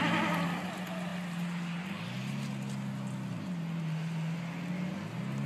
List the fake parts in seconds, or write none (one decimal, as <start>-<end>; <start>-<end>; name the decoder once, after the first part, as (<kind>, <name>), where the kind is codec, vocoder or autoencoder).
none